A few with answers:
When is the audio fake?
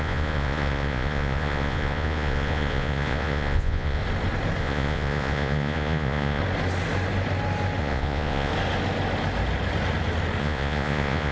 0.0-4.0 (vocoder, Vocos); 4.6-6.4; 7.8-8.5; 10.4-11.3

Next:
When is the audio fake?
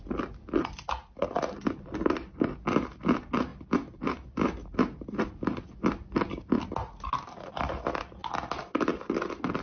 none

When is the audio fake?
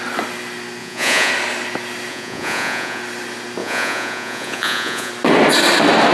0.8-1.3 (vocoder, Vocos); 2.1-3.0; 3.6-5.1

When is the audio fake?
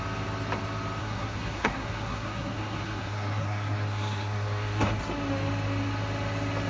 1.0-5.0 (codec, SNAC)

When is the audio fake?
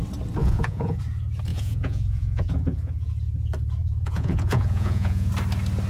0.4-1.0 (vocoder, Vocos); 1.5-3.1; 3.8-5.3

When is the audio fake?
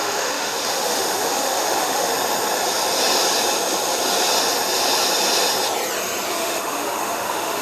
0.0-2.1 (autoencoder, DAC-VAE); 6.3-7.6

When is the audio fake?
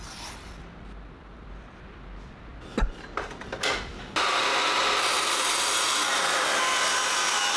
none